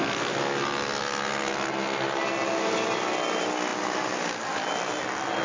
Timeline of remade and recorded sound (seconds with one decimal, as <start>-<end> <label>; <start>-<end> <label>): 0.0-5.4 recorded